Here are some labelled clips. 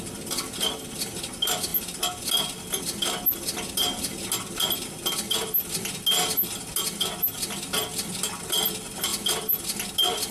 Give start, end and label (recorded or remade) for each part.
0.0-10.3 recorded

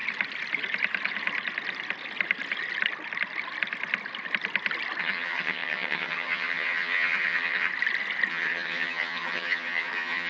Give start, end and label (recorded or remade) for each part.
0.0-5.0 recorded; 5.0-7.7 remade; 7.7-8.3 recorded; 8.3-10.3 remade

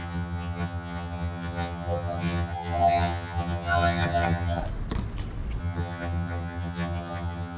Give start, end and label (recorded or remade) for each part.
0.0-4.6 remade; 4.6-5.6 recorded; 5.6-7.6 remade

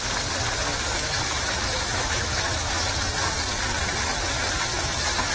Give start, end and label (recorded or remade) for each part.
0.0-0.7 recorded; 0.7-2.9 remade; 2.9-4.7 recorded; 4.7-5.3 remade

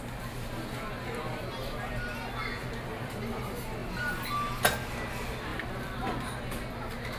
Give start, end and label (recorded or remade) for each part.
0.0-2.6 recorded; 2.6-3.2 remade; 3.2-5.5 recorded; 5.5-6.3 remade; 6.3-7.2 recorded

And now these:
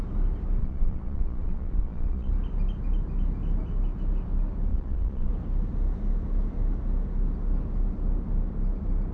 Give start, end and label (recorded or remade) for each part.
0.0-0.6 recorded; 0.6-2.3 remade; 2.3-4.7 recorded; 4.7-5.3 remade; 5.3-9.1 recorded

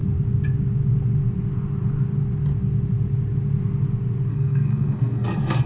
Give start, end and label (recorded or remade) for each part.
0.0-4.3 recorded; 4.3-5.7 remade